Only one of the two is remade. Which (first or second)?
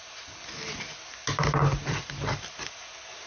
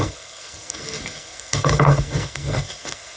second